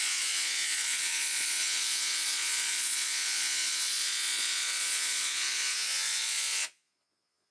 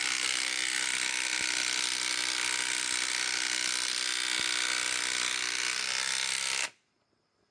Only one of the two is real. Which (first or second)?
second